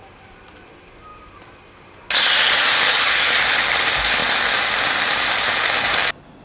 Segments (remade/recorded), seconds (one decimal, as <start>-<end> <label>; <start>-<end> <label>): 0.0-6.4 recorded